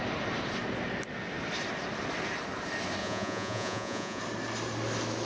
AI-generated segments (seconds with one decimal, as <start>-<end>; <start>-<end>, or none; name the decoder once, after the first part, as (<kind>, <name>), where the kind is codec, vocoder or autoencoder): 3.0-4.2 (vocoder, Vocos)